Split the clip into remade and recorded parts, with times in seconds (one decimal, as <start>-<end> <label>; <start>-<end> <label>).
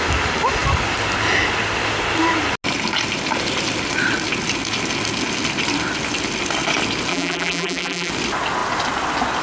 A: 0.0-7.1 recorded; 7.1-8.1 remade; 8.1-9.4 recorded